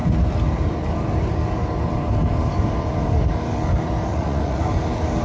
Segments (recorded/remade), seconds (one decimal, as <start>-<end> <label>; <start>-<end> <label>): 0.0-4.1 recorded; 4.1-4.6 remade; 4.6-5.2 recorded